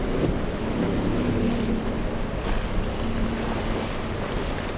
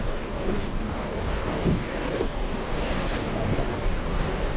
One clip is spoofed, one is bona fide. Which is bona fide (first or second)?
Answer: first